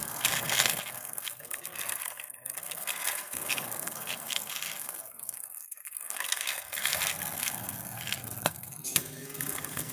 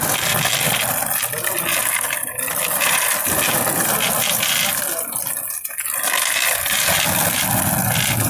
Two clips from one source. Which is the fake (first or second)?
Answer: first